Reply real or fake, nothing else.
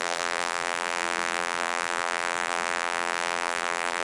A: fake